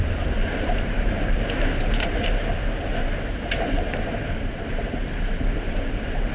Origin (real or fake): fake